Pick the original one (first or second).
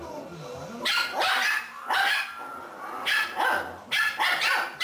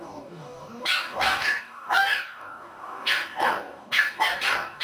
first